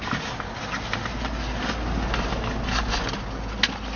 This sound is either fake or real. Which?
real